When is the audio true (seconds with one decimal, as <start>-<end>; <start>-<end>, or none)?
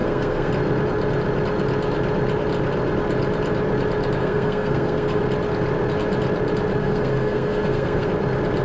0.5-4.2; 5.2-6.8; 8.1-8.6